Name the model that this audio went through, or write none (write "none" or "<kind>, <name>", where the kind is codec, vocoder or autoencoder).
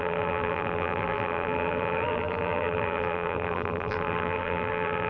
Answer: vocoder, BigVGAN v2